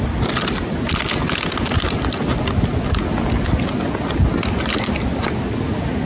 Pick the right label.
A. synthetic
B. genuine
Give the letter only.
B